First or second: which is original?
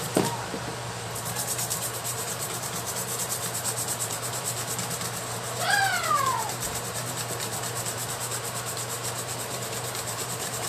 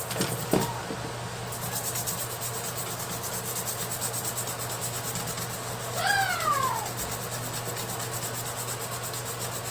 second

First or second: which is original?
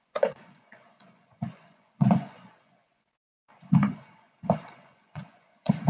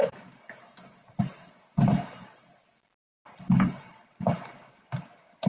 second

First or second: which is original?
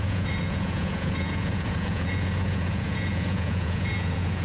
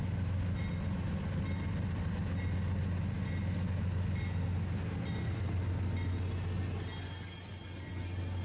second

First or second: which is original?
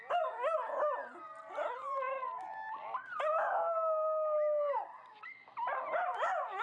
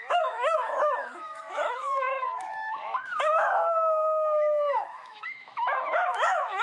first